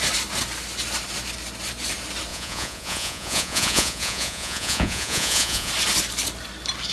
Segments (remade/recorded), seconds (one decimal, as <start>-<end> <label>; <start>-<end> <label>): 0.0-2.3 recorded; 2.3-5.7 remade; 5.7-6.9 recorded